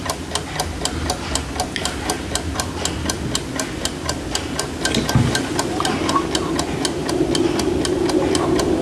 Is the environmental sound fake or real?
real